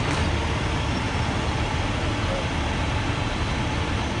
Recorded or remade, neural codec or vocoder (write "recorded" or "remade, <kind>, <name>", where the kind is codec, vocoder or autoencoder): recorded